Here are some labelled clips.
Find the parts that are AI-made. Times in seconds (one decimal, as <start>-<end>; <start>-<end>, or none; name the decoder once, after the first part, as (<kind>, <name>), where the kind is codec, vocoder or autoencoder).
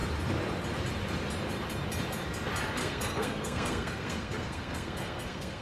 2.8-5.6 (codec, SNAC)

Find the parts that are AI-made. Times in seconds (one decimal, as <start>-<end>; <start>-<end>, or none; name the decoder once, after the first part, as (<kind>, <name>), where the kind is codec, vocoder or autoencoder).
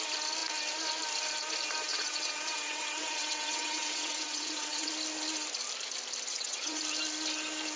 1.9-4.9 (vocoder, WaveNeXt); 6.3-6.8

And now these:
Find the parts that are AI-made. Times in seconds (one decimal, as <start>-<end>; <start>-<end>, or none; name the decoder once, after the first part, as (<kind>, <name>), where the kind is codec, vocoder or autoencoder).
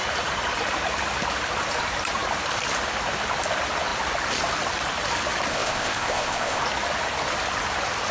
5.5-6.6 (codec, ZipCodec)